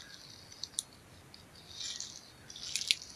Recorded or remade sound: recorded